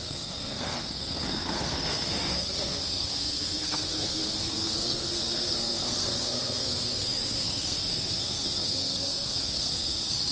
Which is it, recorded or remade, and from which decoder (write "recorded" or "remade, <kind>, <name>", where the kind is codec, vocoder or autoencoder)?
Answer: remade, codec, SNAC